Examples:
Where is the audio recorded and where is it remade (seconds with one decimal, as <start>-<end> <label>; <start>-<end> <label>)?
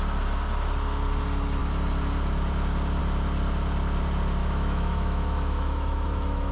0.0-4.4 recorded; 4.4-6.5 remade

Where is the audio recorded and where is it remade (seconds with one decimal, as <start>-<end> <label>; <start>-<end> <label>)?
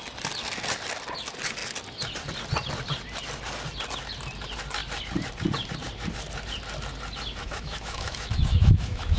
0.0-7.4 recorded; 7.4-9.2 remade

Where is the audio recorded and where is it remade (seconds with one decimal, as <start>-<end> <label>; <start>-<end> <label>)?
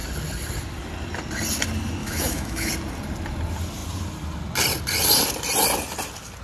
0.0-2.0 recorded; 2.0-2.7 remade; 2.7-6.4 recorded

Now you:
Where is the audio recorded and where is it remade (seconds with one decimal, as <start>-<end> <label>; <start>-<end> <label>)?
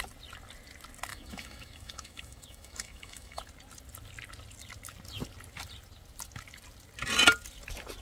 0.0-1.1 recorded; 1.1-3.4 remade; 3.4-8.0 recorded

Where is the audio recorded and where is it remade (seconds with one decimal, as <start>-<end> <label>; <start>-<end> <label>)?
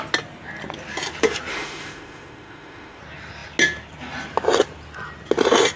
0.0-1.5 recorded; 1.5-3.0 remade; 3.0-5.8 recorded